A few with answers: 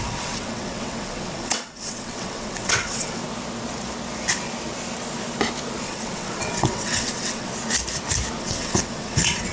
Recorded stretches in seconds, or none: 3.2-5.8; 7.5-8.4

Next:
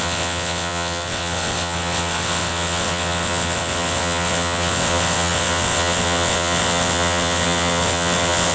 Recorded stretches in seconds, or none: none

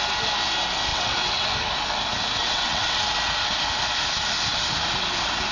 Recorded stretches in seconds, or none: 0.0-0.9; 1.5-2.4; 3.0-5.5

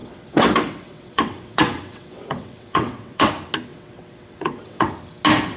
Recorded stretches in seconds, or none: 3.3-3.7; 4.9-5.6

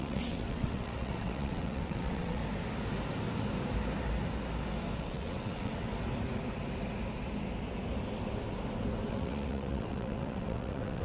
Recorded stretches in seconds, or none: 2.4-5.0; 5.9-9.1

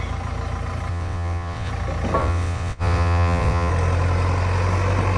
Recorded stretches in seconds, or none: 0.0-0.9; 1.7-2.2; 3.7-5.2